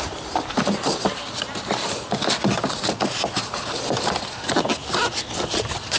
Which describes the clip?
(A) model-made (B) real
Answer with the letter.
B